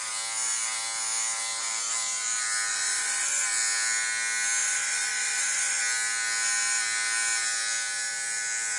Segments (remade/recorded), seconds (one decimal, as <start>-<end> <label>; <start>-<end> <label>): 0.0-2.7 recorded; 2.7-3.4 remade; 3.4-4.6 recorded; 4.6-5.8 remade; 5.8-8.8 recorded